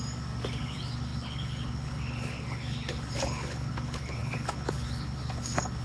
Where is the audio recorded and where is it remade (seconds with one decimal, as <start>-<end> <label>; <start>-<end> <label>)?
0.0-0.6 recorded; 0.6-5.8 remade